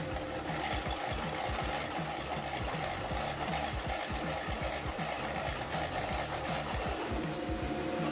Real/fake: real